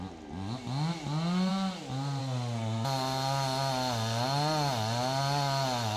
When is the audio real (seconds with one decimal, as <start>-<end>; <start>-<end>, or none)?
0.0-6.0